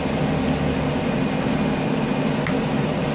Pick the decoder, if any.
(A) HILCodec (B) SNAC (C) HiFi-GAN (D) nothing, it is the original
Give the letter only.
D